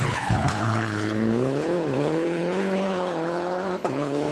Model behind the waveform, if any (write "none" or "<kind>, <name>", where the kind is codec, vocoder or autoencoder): codec, HILCodec